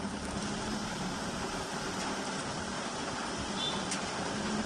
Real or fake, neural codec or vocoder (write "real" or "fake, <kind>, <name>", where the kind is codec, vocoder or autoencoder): fake, vocoder, BigVGAN v2